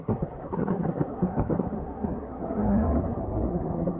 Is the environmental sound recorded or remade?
remade